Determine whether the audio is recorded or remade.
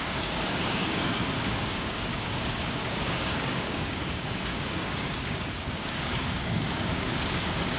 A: remade